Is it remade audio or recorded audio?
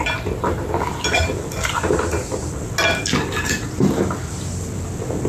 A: recorded